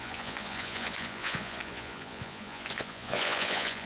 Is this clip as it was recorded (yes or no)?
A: no